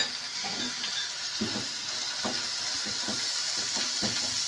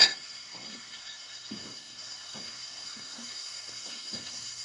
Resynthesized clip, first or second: second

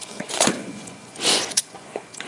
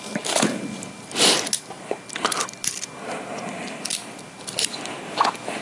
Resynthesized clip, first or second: first